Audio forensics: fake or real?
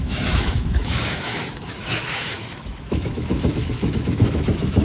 fake